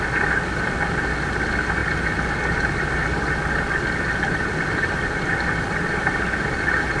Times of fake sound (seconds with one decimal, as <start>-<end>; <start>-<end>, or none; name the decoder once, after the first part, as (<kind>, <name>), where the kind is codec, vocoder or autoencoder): none